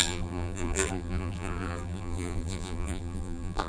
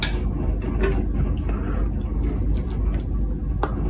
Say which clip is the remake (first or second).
first